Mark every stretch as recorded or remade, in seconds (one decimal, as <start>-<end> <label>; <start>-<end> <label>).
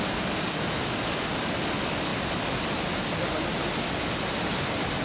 0.0-5.0 recorded